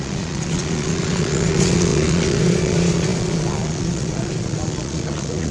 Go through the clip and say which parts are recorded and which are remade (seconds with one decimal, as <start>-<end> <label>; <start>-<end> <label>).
0.0-5.5 remade